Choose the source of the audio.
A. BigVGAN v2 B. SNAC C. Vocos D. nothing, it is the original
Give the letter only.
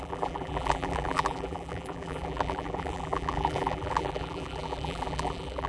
A